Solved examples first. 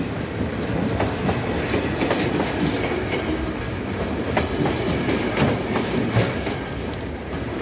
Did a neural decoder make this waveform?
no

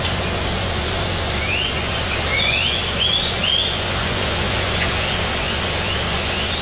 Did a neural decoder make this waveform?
yes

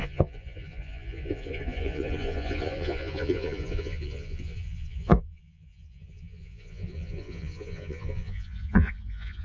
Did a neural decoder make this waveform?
yes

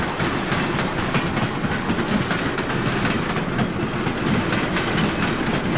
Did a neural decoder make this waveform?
no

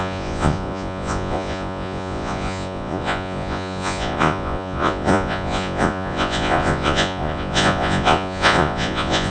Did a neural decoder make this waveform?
yes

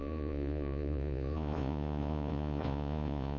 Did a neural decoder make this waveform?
yes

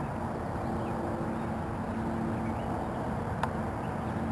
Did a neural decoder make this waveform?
no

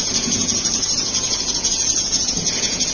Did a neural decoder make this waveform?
yes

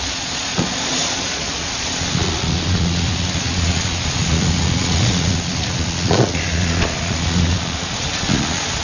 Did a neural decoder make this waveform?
yes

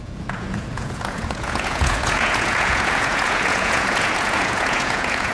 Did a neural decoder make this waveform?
yes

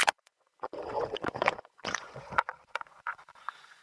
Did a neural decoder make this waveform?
yes